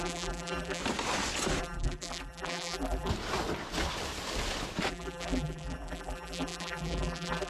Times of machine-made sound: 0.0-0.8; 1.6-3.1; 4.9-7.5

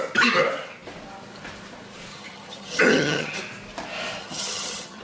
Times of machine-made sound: 2.1-3.4; 4.2-5.0

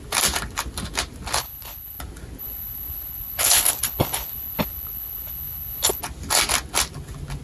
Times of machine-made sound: 1.4-2.0; 2.4-6.0

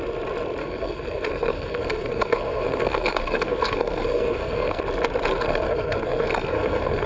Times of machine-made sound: 0.6-4.8; 5.3-7.1

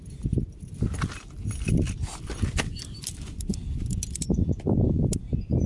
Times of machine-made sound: none

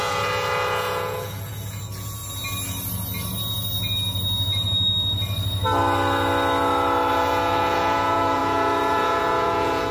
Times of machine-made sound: 0.0-2.2; 7.1-9.9

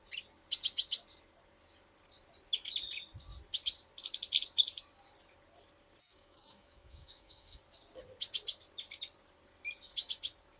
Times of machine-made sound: 6.0-7.6

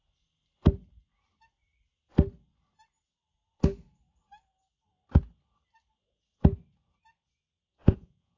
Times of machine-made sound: 7.7-8.4